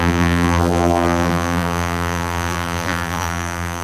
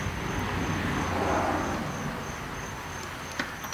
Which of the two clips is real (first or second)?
second